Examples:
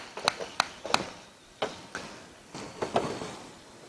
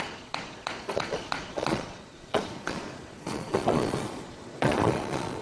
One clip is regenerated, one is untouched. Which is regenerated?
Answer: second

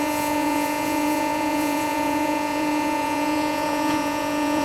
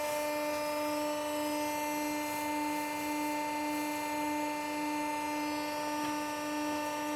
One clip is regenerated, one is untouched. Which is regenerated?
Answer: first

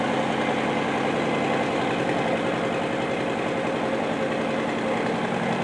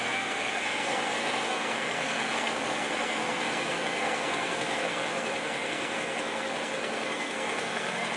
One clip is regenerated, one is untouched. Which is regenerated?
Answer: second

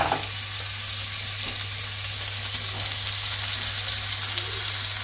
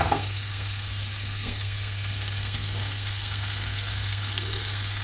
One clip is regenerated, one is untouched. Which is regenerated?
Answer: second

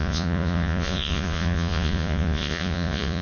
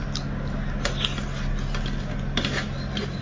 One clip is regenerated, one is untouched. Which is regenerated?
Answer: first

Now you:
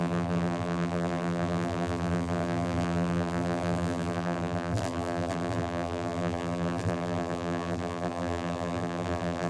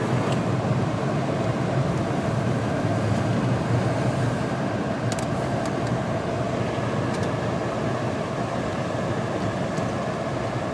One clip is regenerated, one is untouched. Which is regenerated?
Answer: first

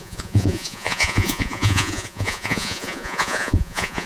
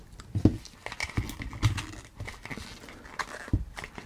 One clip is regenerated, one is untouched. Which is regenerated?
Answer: first